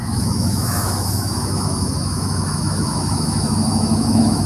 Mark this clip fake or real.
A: fake